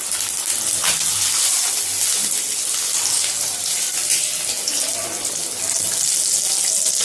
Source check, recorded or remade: recorded